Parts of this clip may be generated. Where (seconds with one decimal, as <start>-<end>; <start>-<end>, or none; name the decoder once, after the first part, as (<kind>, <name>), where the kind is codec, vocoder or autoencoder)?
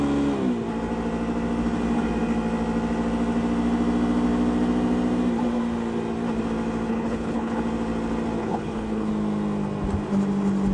6.9-7.6 (codec, HILCodec); 8.4-9.1